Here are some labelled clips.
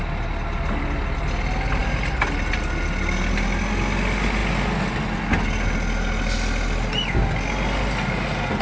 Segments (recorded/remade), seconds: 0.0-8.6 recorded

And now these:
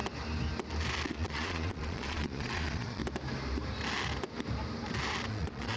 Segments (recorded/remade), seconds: 0.0-1.1 recorded; 1.1-3.0 remade; 3.0-5.3 recorded; 5.3-5.8 remade

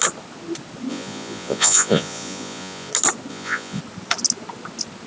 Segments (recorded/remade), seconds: 0.0-0.9 recorded; 0.9-2.9 remade; 2.9-3.3 recorded; 3.3-3.8 remade; 3.8-5.1 recorded